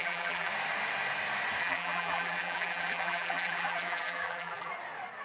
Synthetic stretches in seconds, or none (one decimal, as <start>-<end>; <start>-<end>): 0.0-0.5; 1.6-4.7